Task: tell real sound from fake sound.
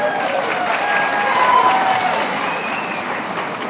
real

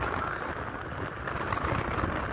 real